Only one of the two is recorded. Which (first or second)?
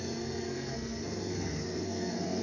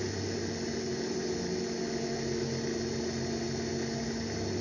second